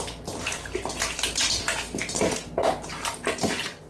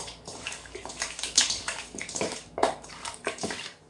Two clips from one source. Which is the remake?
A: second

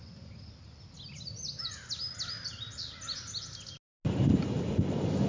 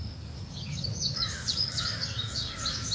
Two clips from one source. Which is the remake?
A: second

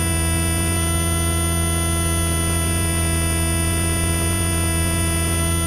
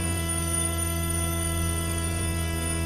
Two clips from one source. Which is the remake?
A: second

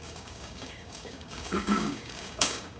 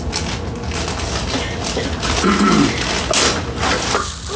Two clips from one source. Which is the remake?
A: first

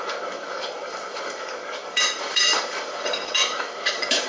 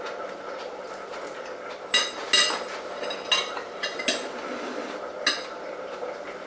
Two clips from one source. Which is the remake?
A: first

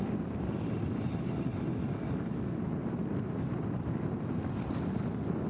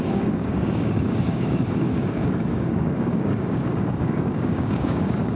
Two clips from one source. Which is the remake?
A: second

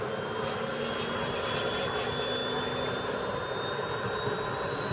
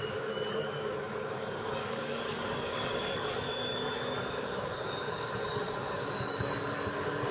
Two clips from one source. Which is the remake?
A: second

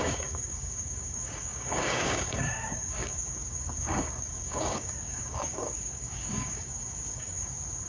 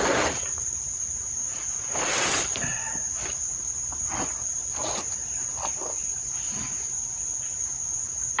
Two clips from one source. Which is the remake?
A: first